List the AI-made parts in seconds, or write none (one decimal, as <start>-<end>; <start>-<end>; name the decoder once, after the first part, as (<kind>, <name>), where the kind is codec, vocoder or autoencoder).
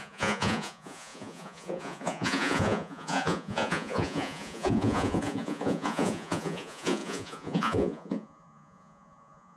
0.0-9.6 (vocoder, Vocos)